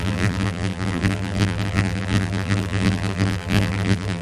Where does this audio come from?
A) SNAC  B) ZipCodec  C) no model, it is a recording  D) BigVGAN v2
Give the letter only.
D